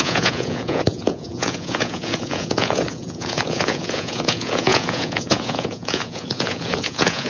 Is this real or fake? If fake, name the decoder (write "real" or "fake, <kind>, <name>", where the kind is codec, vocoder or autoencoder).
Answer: fake, vocoder, Vocos